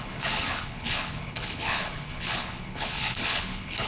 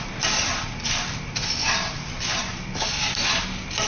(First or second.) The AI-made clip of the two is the first